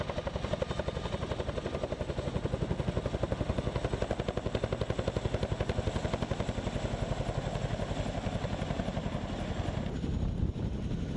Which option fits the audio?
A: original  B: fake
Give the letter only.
A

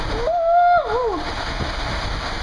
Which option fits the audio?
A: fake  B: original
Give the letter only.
B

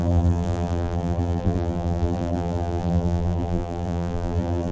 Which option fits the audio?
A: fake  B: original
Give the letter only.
A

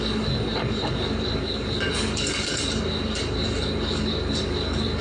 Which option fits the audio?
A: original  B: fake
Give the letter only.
B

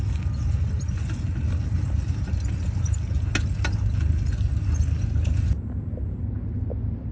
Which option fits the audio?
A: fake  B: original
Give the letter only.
B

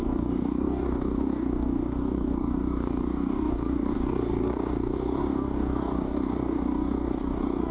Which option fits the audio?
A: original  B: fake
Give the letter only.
B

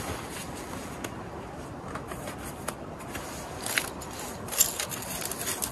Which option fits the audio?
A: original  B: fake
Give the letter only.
A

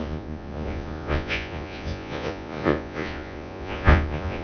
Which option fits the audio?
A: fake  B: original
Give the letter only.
A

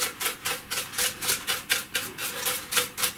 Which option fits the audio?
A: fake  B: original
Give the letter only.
B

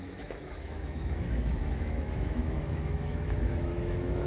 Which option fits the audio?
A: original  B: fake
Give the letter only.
B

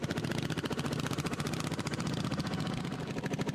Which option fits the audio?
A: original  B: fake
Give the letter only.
A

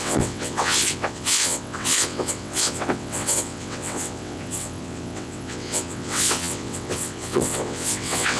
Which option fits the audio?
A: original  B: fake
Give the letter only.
B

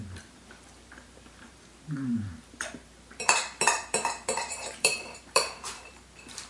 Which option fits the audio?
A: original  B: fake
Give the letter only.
B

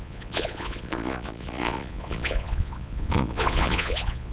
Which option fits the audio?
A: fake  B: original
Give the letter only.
A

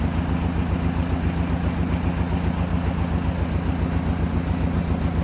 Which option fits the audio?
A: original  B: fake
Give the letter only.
A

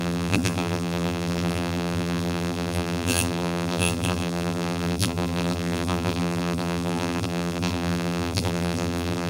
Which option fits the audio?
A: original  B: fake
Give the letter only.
B